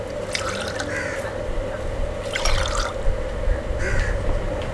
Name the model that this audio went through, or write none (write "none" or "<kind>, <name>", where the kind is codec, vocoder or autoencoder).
none